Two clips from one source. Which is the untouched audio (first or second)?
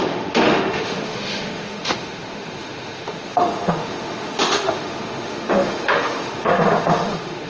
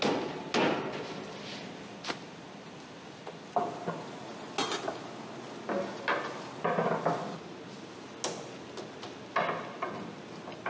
second